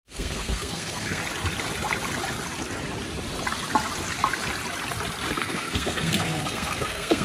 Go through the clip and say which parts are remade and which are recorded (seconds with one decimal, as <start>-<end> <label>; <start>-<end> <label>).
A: 0.0-1.2 remade; 1.2-5.4 recorded; 5.4-7.2 remade